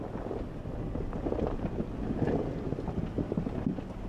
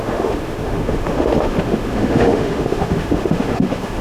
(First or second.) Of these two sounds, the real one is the first